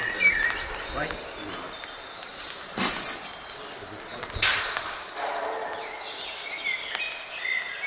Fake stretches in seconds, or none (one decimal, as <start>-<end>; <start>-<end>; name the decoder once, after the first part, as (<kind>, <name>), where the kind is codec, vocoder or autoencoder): 2.3-3.0 (vocoder, BigVGAN v2); 4.1-5.1